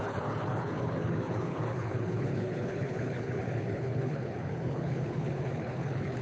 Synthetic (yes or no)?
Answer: yes